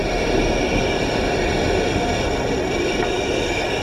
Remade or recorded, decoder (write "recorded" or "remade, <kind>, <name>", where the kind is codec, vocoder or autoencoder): recorded